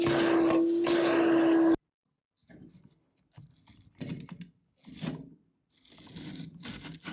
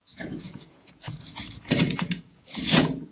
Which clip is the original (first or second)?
first